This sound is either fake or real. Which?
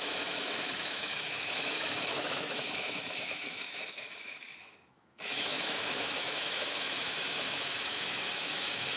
fake